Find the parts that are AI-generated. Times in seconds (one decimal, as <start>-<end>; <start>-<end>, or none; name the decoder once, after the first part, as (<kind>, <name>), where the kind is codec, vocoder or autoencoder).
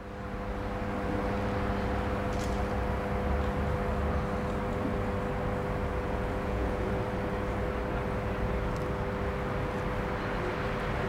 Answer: 5.9-6.9 (vocoder, Vocos)